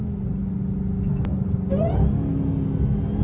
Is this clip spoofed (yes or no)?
no